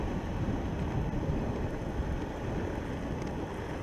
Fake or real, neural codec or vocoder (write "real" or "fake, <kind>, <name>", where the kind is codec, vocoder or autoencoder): real